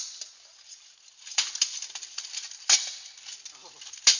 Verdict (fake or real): real